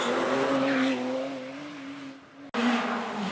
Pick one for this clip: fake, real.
real